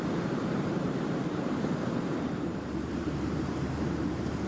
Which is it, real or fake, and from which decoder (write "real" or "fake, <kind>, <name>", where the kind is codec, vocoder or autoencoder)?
fake, vocoder, BigVGAN v2